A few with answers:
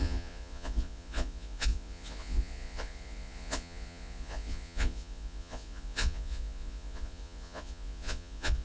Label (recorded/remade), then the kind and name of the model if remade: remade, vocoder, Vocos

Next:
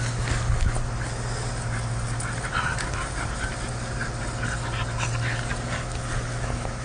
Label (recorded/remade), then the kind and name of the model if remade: recorded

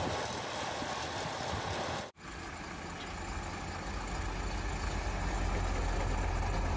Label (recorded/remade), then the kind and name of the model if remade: recorded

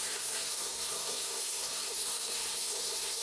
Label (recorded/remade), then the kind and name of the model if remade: remade, codec, SNAC